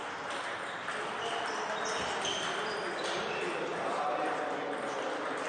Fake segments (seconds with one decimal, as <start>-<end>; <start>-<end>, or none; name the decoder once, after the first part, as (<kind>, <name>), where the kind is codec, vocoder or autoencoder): none